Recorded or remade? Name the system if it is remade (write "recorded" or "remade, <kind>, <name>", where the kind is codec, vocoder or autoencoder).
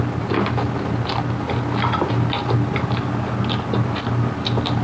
recorded